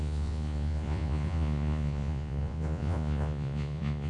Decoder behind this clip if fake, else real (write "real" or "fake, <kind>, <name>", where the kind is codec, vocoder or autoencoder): fake, vocoder, Vocos